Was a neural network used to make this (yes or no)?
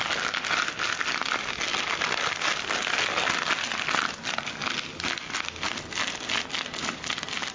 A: no